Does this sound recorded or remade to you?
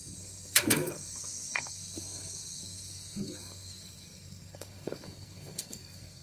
remade